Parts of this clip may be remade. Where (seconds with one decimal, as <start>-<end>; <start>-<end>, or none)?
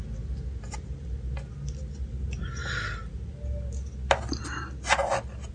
none